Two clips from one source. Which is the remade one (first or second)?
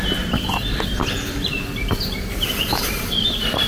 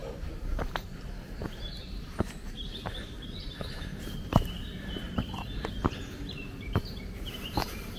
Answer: second